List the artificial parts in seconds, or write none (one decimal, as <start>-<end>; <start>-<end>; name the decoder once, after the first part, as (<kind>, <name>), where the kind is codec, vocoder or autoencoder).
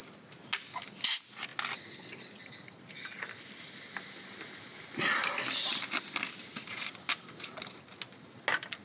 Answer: none